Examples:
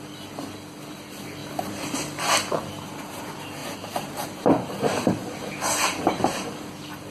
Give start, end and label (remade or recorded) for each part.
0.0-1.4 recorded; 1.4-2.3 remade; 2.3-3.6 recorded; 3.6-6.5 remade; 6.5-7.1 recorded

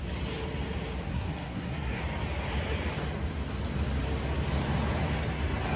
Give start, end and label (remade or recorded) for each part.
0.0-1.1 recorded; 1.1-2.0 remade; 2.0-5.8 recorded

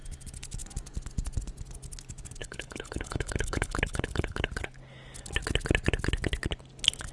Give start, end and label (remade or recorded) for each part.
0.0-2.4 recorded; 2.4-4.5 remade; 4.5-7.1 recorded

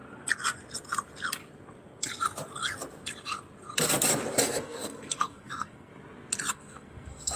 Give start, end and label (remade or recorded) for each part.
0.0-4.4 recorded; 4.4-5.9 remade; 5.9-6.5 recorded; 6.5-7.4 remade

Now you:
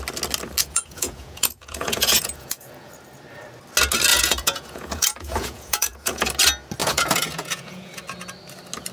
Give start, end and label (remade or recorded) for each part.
0.0-0.6 recorded; 0.6-2.9 remade; 2.9-4.1 recorded; 4.1-6.3 remade; 6.3-6.8 recorded; 6.8-8.0 remade; 8.0-8.9 recorded

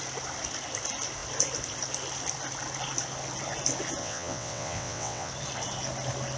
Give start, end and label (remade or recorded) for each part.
0.0-4.0 recorded; 4.0-5.3 remade; 5.3-6.4 recorded